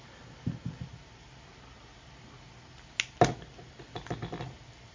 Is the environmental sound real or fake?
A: real